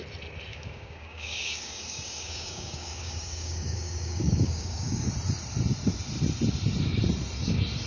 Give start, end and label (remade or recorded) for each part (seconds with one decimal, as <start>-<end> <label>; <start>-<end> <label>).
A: 0.0-0.5 recorded; 0.5-5.0 remade; 5.0-7.9 recorded